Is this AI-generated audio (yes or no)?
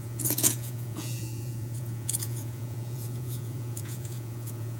yes